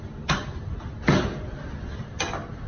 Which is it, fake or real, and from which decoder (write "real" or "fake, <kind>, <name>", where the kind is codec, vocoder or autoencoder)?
real